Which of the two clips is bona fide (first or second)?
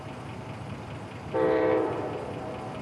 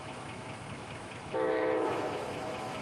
first